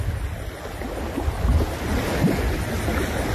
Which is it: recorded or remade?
recorded